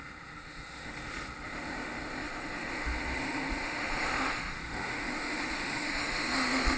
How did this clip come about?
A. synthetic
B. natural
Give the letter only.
A